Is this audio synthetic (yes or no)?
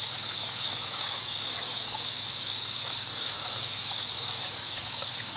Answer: yes